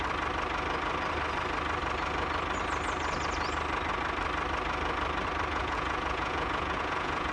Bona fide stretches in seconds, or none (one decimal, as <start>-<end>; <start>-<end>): 0.0-5.5